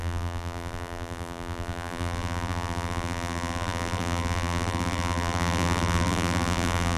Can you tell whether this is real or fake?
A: fake